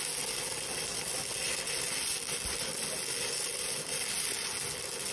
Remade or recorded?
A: recorded